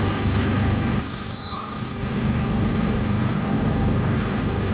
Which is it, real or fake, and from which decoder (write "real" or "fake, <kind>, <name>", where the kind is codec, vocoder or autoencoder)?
fake, codec, DAC